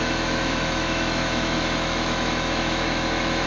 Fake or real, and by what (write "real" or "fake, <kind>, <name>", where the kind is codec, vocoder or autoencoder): fake, autoencoder, DAC-VAE